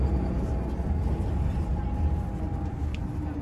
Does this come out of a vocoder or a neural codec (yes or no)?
no